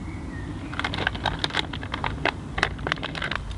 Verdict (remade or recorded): recorded